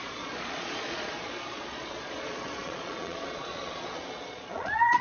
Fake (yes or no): yes